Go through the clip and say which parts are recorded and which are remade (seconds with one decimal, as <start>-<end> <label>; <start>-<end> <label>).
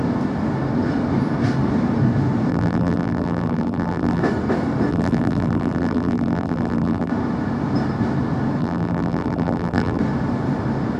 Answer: 0.0-2.5 recorded; 2.5-4.2 remade; 4.2-4.9 recorded; 4.9-7.1 remade; 7.1-8.6 recorded; 8.6-10.0 remade; 10.0-11.0 recorded